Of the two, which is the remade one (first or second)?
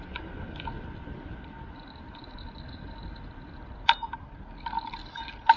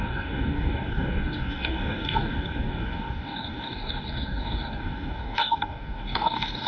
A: second